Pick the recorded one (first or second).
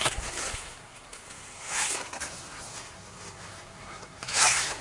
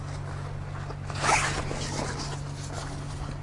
second